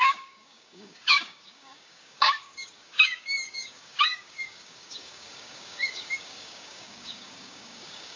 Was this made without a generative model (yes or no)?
no